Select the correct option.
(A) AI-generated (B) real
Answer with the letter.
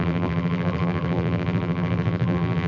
A